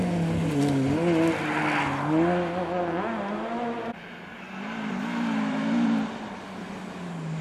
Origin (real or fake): real